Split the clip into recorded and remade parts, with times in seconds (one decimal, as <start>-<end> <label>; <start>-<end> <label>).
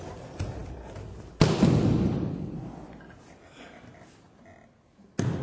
0.0-5.4 recorded